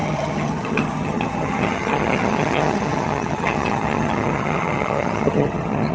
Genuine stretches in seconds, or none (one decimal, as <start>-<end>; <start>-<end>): none